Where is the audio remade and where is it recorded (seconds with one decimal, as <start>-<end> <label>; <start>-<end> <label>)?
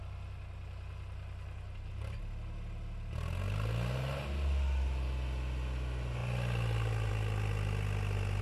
0.0-8.4 recorded